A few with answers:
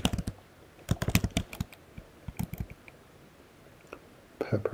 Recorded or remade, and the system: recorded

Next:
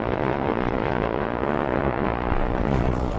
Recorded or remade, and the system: remade, vocoder, Vocos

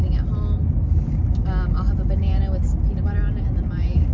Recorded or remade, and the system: recorded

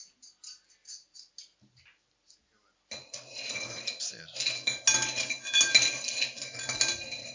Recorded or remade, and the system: recorded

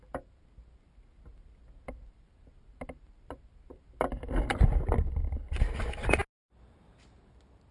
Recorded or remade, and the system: recorded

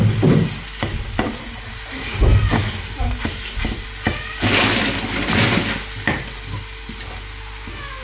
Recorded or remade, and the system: recorded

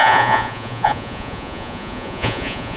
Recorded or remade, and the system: remade, vocoder, Vocos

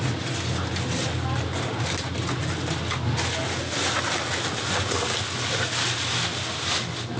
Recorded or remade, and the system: recorded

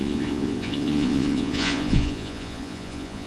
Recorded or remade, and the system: remade, vocoder, Vocos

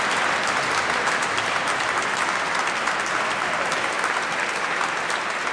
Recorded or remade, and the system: recorded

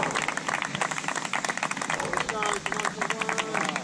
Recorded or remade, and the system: recorded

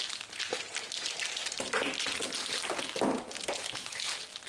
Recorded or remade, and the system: recorded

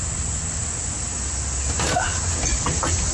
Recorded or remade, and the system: recorded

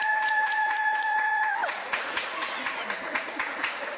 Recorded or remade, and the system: remade, vocoder, Vocos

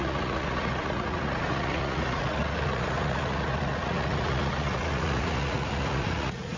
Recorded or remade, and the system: remade, vocoder, Vocos